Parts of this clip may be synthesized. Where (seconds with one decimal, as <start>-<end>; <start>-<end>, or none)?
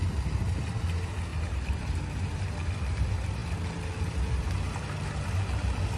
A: 1.3-2.0